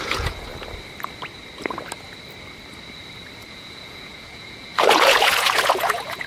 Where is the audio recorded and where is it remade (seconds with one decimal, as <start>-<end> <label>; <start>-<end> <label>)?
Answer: 0.0-0.5 remade; 0.5-3.5 recorded; 3.5-6.3 remade